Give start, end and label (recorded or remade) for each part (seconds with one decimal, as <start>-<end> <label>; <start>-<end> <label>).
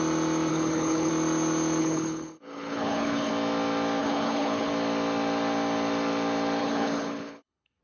0.0-0.5 recorded; 0.5-1.1 remade; 1.1-1.8 recorded; 1.8-3.3 remade; 3.3-4.0 recorded; 4.0-4.7 remade; 4.7-6.6 recorded; 6.6-7.8 remade